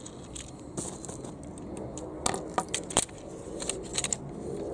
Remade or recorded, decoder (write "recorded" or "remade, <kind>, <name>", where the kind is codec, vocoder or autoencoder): recorded